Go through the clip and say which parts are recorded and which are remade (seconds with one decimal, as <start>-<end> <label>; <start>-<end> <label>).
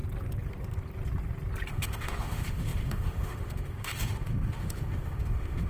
0.0-1.7 recorded; 1.7-5.7 remade